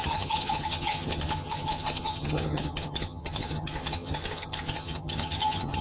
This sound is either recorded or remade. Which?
remade